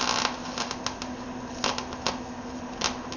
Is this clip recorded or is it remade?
recorded